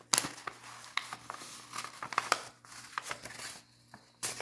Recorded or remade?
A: recorded